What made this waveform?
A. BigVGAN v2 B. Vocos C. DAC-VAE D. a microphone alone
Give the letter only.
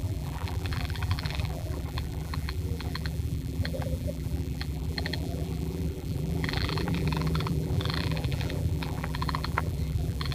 A